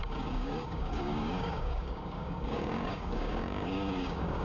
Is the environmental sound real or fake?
fake